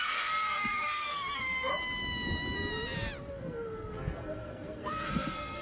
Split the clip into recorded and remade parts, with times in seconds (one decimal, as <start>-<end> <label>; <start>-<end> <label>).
0.0-1.7 remade; 1.7-3.3 recorded; 3.3-5.6 remade